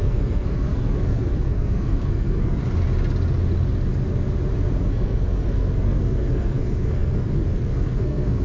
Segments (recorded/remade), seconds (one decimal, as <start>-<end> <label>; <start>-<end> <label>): 0.0-2.6 remade; 2.6-4.9 recorded; 4.9-8.4 remade